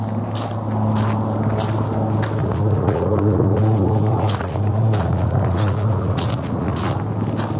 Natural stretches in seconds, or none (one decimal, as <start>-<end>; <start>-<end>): 0.0-2.4; 7.0-7.6